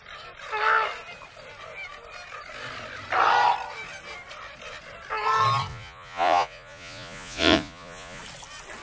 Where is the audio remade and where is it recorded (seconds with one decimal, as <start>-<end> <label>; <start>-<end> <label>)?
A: 0.0-5.7 recorded; 5.7-8.2 remade; 8.2-8.8 recorded